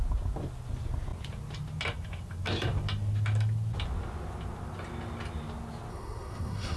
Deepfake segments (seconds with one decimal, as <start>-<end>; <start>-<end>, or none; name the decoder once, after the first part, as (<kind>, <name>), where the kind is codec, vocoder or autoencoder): 5.9-6.8 (codec, SNAC)